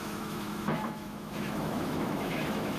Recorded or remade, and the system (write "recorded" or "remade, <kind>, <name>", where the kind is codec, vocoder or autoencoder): remade, autoencoder, DAC-VAE